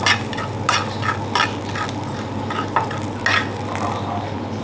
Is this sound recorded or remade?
recorded